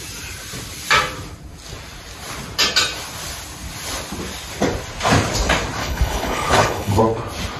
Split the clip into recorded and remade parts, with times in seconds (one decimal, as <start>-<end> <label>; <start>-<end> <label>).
0.0-5.8 recorded; 5.8-7.0 remade; 7.0-7.6 recorded

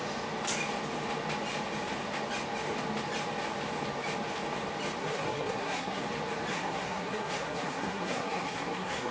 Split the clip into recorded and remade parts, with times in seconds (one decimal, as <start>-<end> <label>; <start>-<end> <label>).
0.0-5.0 recorded; 5.0-6.0 remade; 6.0-6.5 recorded; 6.5-9.1 remade

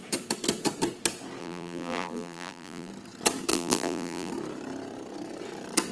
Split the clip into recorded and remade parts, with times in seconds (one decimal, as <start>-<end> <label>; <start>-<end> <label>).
0.0-1.4 recorded; 1.4-2.9 remade; 2.9-3.5 recorded; 3.5-4.3 remade; 4.3-5.9 recorded